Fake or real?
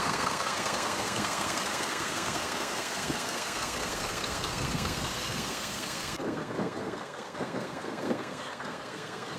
fake